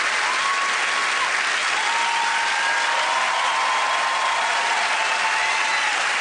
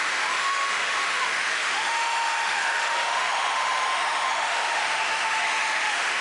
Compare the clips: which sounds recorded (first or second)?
first